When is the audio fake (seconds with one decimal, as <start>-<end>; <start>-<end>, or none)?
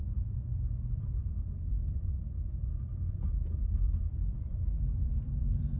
0.0-1.7; 3.8-5.8